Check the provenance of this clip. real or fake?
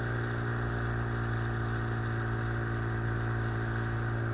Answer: real